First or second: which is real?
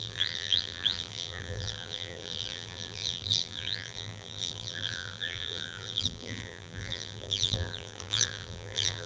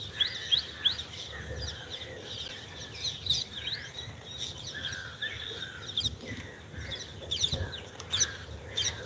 second